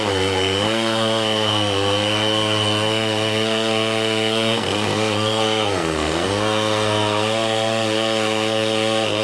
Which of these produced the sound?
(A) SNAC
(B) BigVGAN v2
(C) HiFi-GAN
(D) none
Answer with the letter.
A